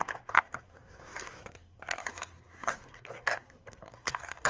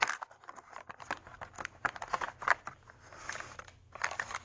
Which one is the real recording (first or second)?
second